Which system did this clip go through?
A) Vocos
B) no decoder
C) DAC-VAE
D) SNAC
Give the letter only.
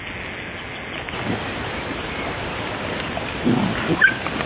B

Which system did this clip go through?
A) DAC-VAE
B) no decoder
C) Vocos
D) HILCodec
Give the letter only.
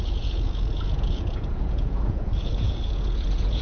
C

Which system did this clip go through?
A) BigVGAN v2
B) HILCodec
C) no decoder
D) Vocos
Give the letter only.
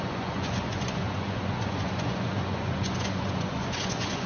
D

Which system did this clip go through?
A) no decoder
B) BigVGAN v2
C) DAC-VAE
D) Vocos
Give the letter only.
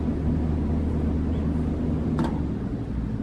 A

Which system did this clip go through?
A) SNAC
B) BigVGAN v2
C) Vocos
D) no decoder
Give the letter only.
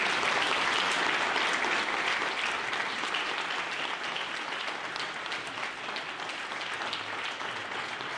D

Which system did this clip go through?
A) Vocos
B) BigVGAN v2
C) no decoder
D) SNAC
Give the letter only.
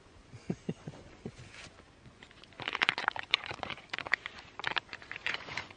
A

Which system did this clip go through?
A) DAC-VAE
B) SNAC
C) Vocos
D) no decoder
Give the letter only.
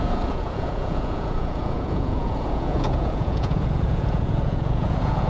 C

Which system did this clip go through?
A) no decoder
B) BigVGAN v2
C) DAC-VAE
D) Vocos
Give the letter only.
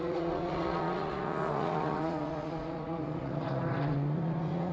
D